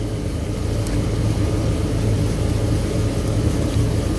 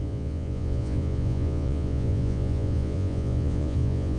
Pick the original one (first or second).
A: first